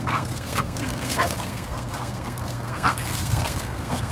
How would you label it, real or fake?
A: fake